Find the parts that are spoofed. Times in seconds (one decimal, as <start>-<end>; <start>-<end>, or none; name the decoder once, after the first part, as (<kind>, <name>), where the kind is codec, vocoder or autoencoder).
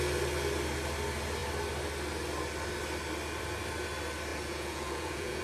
4.3-5.4 (vocoder, Vocos)